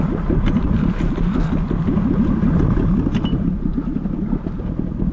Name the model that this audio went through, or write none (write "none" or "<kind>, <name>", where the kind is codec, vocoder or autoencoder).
none